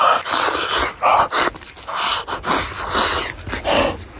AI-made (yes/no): no